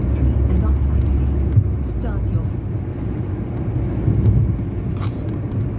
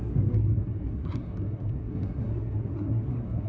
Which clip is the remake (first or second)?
second